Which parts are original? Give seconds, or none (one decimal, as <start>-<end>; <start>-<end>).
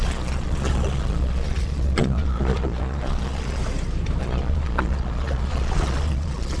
3.6-4.2